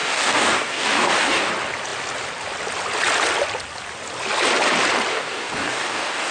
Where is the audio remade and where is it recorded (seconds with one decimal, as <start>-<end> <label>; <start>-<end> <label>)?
0.0-1.5 remade; 1.5-5.1 recorded; 5.1-6.3 remade